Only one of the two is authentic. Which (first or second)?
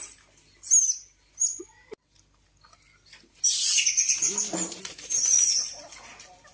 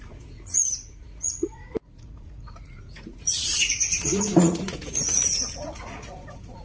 first